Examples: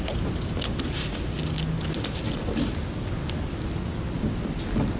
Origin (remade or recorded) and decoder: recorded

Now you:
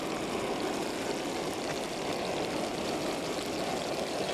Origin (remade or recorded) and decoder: recorded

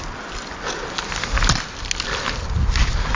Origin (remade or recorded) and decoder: recorded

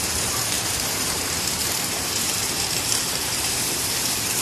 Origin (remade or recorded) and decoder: remade, vocoder, BigVGAN v2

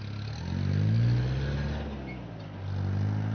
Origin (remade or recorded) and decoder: recorded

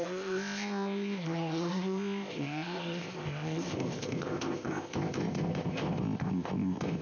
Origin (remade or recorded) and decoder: remade, codec, ZipCodec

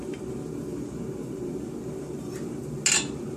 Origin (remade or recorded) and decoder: recorded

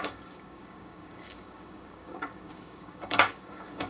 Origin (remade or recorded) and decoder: remade, codec, DAC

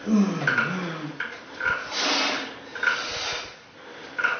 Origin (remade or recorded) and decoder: recorded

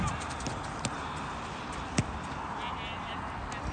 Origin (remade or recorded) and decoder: recorded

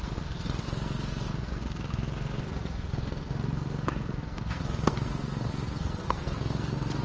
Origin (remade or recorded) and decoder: remade, codec, SNAC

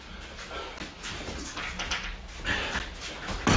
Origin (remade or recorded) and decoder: recorded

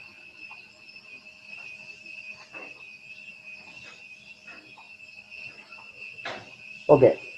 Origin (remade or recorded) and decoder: recorded